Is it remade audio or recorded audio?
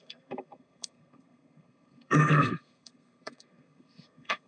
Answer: remade